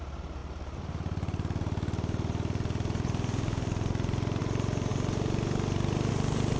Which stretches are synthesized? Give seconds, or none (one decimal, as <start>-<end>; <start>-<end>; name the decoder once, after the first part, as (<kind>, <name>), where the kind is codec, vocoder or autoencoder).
none